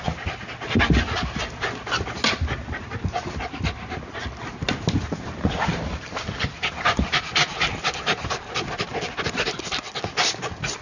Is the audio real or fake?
real